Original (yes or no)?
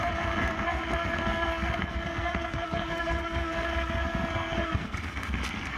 no